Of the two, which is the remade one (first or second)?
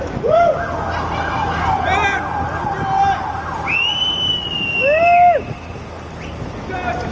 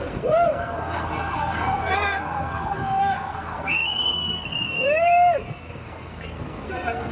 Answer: second